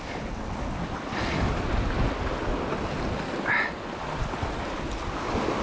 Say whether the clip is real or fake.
real